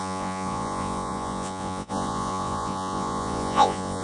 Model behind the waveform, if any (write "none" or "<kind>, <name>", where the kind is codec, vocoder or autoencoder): vocoder, Vocos